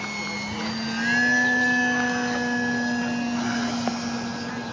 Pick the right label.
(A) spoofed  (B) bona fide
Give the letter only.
B